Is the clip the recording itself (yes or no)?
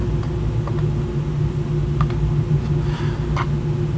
yes